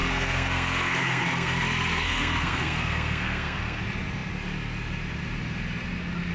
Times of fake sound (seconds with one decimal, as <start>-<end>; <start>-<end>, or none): 0.0-3.8